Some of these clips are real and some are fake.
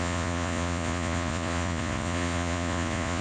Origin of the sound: fake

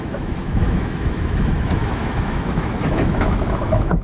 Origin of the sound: fake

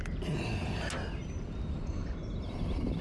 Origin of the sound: real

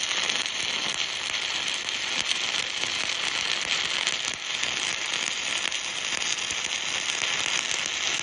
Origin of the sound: real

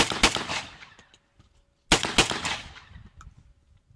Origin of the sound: real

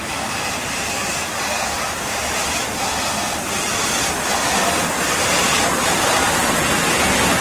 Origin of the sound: real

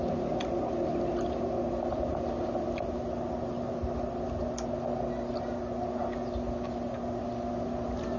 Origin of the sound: real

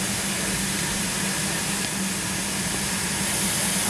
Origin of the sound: real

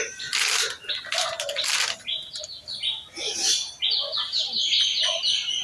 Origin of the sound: real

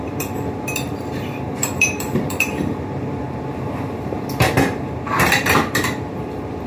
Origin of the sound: fake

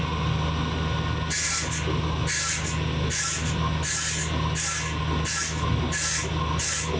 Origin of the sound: real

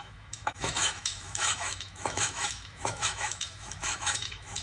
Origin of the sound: fake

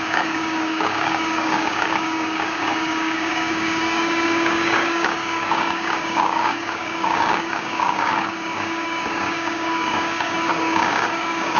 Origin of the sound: fake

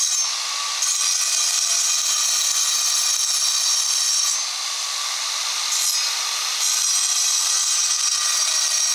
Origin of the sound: real